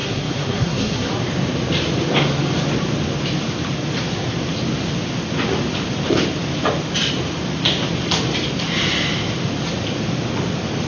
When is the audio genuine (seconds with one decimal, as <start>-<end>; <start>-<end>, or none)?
1.1-10.9